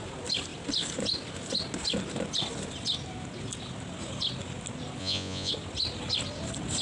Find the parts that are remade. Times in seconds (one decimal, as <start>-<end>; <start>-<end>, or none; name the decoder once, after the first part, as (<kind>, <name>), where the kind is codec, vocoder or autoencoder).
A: 5.0-5.5 (vocoder, Vocos)